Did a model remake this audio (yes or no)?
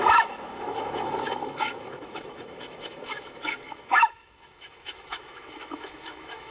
yes